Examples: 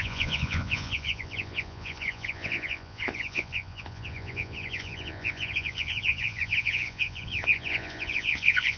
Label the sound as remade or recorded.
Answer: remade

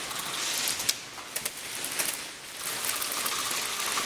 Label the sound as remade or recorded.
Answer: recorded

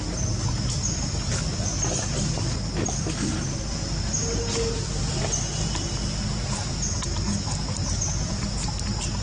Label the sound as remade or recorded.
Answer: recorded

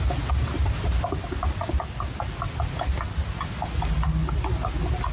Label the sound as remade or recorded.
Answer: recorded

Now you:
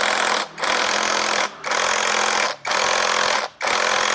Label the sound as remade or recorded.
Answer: recorded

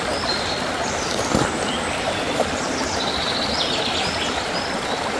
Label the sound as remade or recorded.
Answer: recorded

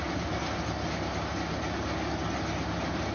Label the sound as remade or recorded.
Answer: recorded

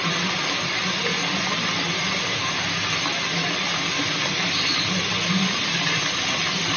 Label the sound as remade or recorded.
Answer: recorded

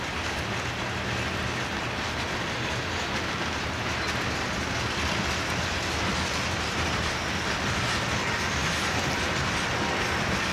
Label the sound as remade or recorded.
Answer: recorded